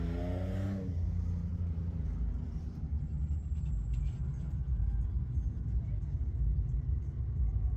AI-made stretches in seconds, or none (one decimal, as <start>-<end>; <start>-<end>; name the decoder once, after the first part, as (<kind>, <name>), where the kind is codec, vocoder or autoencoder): 1.5-3.2 (vocoder, BigVGAN v2)